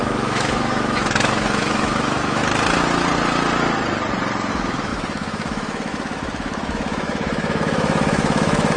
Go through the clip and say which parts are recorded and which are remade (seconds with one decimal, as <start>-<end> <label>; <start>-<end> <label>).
0.0-2.4 remade; 2.4-4.5 recorded; 4.5-8.8 remade